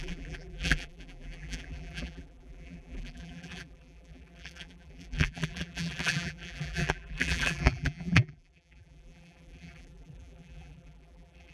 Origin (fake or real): fake